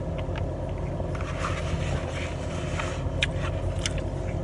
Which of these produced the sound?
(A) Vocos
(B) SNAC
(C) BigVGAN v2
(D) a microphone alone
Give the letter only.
D